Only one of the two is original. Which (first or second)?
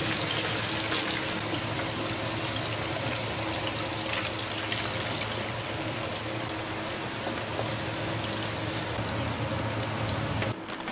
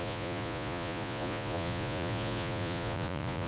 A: first